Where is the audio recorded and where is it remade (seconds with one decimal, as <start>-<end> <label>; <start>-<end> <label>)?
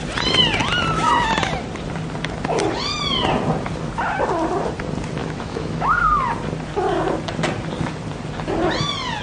0.0-5.2 recorded; 5.2-6.0 remade; 6.0-9.2 recorded